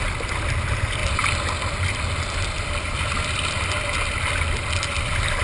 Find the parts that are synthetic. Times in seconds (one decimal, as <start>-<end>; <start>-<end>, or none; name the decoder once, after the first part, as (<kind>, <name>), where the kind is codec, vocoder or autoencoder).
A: none